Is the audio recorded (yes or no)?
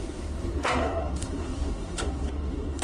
no